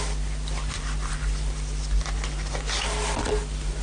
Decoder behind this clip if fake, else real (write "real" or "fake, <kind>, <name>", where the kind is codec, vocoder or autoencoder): real